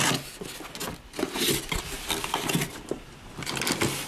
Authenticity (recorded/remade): recorded